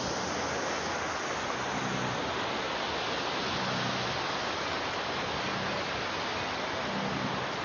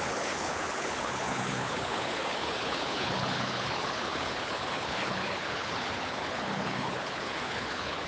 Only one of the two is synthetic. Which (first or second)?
second